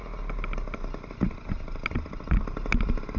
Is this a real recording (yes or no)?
yes